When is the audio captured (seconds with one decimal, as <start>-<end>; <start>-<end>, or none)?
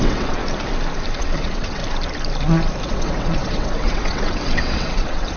0.4-1.2; 1.8-2.8